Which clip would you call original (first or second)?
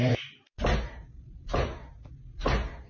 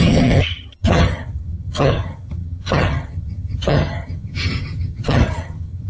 first